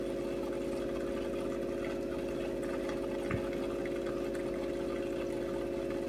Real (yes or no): yes